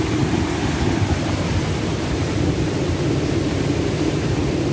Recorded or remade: recorded